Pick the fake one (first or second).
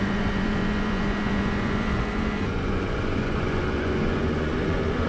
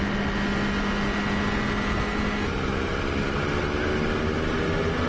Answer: first